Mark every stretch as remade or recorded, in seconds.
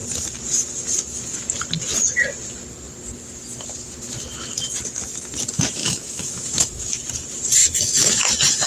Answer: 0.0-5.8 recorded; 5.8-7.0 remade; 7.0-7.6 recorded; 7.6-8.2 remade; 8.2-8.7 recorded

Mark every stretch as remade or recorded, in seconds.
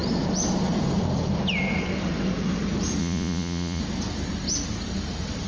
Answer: 0.0-3.0 recorded; 3.0-3.8 remade; 3.8-5.5 recorded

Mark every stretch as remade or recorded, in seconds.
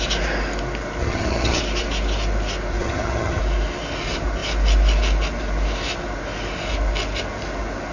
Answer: 0.0-1.0 recorded; 1.0-1.6 remade; 1.6-2.8 recorded; 2.8-3.4 remade; 3.4-7.9 recorded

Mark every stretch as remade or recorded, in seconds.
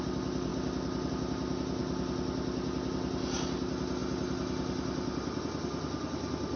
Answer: 0.0-6.6 recorded